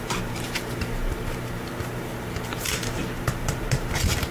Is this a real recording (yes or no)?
no